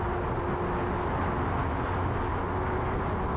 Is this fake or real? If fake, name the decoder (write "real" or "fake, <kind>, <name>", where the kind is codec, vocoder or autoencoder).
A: real